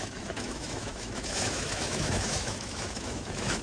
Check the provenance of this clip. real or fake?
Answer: fake